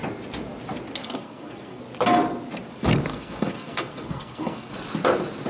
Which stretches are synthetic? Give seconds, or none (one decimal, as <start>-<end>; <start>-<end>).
1.0-1.8; 3.1-4.7